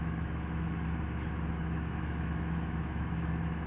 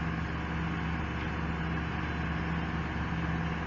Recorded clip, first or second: second